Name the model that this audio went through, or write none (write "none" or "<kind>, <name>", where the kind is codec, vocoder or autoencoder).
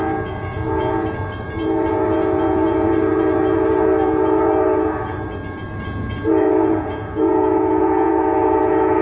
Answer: vocoder, Vocos